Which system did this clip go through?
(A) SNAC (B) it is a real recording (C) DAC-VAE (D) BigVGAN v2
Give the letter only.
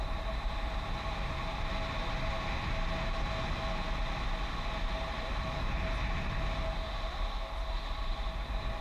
B